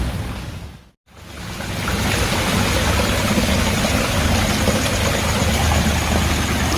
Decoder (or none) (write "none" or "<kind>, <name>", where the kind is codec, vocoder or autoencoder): none